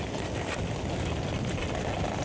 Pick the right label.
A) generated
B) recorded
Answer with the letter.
B